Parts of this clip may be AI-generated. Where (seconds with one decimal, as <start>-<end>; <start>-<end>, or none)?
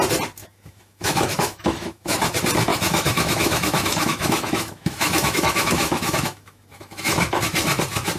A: 0.4-2.2; 2.7-7.4